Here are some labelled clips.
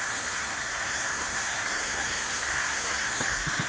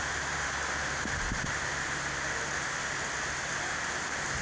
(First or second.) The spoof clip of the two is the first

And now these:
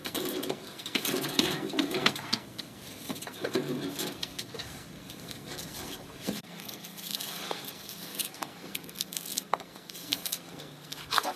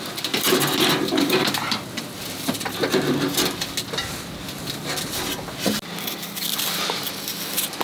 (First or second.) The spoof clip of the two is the first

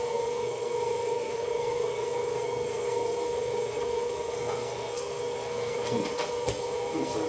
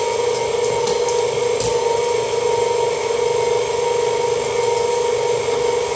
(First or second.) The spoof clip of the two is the first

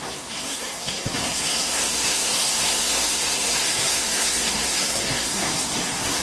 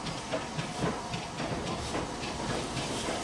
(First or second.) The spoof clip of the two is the first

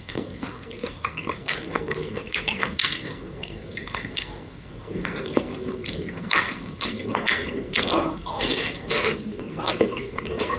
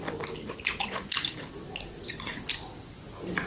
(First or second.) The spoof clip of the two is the first